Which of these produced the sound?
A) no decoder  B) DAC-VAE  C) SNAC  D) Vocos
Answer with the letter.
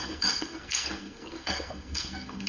C